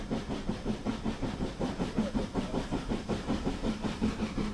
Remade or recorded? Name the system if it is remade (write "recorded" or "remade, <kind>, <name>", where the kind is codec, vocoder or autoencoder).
remade, vocoder, BigVGAN v2